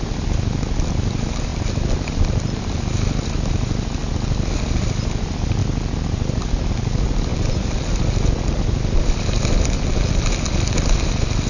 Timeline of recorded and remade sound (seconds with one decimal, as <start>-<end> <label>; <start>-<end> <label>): 0.0-1.5 recorded; 1.5-2.6 remade; 2.6-5.6 recorded; 5.6-6.7 remade; 6.7-11.5 recorded